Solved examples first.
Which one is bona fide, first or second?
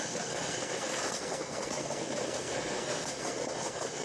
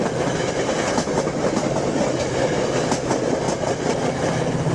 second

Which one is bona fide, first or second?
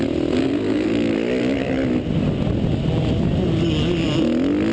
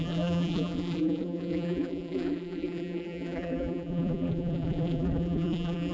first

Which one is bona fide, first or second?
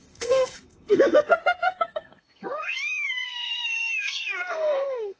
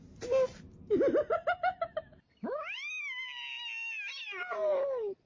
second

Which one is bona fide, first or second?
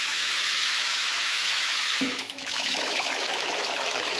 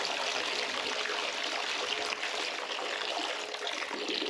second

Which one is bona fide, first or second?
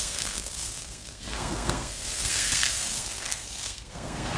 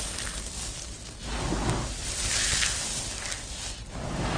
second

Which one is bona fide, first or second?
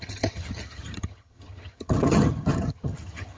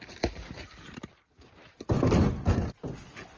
second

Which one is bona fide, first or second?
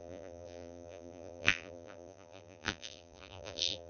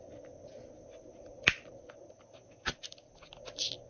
second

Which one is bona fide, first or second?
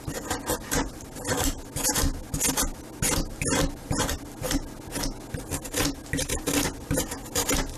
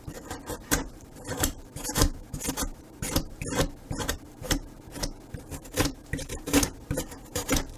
first